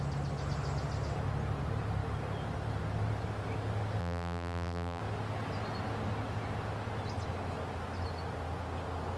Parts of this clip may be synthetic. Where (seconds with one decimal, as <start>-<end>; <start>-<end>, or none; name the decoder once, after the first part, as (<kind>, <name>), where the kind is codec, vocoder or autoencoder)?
4.0-5.0 (vocoder, BigVGAN v2)

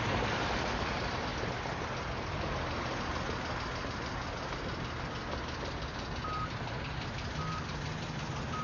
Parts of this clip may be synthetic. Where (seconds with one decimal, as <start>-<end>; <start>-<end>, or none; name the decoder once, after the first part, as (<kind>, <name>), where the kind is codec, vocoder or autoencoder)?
none

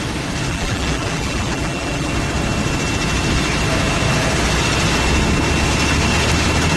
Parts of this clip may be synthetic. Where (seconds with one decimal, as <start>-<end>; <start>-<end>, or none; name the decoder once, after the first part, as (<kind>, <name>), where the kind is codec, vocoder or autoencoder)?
0.5-2.1 (vocoder, BigVGAN v2)

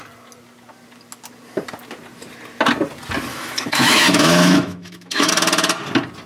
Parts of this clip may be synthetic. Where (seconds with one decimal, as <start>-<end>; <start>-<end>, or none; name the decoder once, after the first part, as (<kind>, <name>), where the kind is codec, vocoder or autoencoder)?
3.3-5.3 (autoencoder, DAC-VAE)

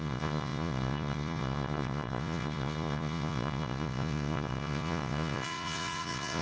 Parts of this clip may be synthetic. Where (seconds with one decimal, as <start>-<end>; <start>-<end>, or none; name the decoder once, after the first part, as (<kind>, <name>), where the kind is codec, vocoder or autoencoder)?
0.0-6.4 (vocoder, Vocos)

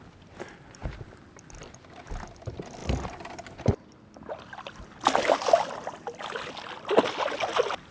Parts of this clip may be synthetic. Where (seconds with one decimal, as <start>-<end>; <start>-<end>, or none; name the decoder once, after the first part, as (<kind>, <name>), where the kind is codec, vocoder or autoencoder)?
none

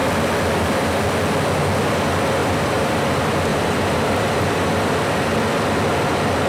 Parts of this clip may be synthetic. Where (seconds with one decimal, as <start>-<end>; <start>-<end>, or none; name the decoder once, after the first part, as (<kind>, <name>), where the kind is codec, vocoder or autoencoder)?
2.4-3.0 (vocoder, BigVGAN v2); 3.5-4.5